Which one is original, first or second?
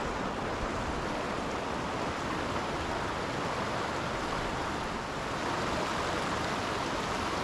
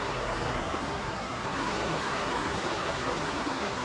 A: first